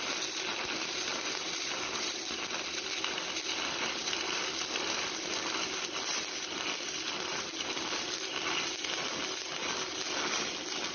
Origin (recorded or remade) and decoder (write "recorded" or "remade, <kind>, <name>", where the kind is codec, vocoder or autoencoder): recorded